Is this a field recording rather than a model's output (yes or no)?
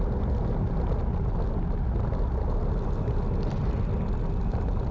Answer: yes